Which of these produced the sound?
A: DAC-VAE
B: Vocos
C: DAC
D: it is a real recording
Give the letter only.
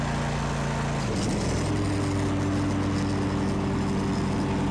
D